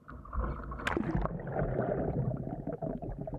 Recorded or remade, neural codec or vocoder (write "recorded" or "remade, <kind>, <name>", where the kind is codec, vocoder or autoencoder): recorded